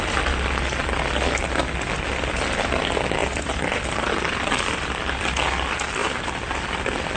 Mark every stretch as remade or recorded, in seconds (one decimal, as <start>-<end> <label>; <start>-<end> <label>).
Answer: 0.0-3.2 recorded; 3.2-5.2 remade; 5.2-6.0 recorded; 6.0-6.7 remade; 6.7-7.2 recorded